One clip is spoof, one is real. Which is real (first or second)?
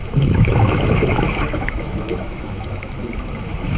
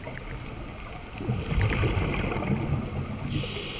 second